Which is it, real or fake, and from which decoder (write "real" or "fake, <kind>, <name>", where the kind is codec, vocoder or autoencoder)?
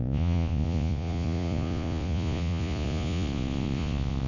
fake, vocoder, Vocos